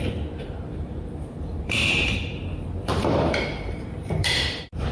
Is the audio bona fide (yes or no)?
no